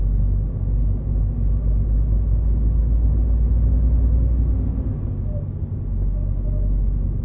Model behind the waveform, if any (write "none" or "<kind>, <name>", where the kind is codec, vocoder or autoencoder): none